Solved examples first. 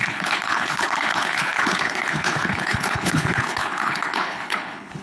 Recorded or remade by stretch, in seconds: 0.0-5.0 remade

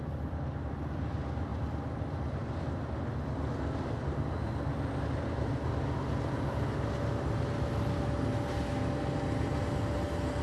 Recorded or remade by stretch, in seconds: 0.0-10.4 recorded

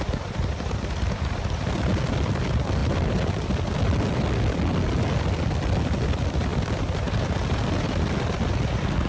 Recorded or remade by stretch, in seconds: 0.0-9.1 recorded

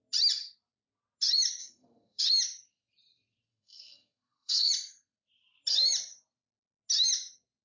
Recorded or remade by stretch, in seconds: 0.0-1.6 recorded; 1.6-2.2 remade; 2.2-3.5 recorded; 3.5-4.7 remade; 4.7-7.6 recorded